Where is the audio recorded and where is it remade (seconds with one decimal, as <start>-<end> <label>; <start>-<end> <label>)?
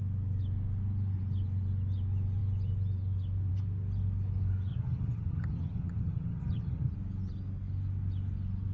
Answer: 0.0-4.7 recorded; 4.7-6.9 remade; 6.9-8.7 recorded